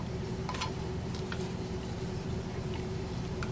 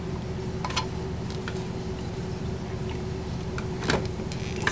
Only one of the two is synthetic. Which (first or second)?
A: first